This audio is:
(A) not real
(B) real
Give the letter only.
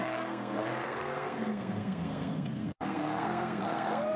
A